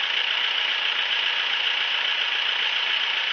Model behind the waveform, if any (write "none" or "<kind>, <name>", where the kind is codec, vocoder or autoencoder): none